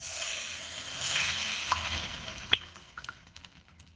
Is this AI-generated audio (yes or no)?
yes